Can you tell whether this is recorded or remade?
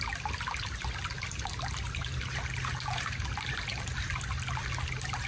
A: recorded